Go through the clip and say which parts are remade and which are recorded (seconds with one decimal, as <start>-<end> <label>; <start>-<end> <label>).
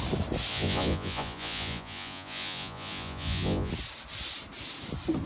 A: 0.0-0.5 recorded; 0.5-3.7 remade; 3.7-5.3 recorded